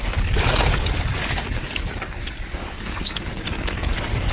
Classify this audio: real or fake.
fake